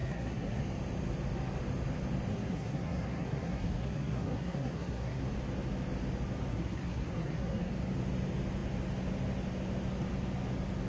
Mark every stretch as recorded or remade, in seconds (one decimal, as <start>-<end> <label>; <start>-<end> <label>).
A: 0.0-0.6 remade; 0.6-2.3 recorded; 2.3-5.2 remade; 5.2-6.5 recorded; 6.5-7.7 remade; 7.7-10.9 recorded